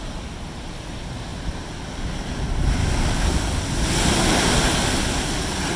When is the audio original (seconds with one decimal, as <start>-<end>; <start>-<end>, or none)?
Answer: 0.0-2.8; 3.6-5.8

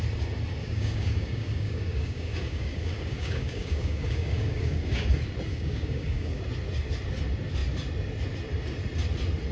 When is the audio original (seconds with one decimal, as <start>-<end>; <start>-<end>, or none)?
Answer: 0.0-0.6; 5.1-5.5; 6.4-9.5

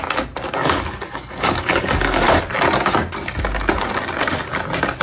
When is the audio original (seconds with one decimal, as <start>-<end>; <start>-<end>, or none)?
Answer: 0.0-0.6; 2.4-5.0

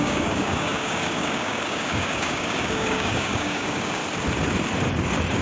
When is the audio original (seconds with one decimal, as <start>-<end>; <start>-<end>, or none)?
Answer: 4.0-5.4

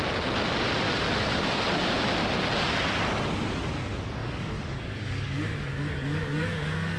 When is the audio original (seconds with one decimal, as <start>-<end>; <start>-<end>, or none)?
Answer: 0.0-4.2

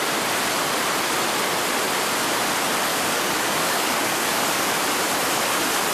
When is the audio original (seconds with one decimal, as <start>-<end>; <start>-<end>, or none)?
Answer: 0.0-2.9; 4.8-5.9

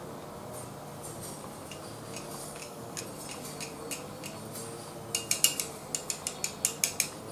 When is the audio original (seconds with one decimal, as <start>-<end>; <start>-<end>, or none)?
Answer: 0.0-2.4; 3.0-7.3

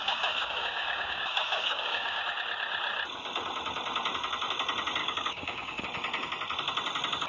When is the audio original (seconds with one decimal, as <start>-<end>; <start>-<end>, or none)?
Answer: 2.2-5.0; 5.8-7.3